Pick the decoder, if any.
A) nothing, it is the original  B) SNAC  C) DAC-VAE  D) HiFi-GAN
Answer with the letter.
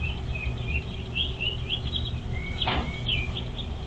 A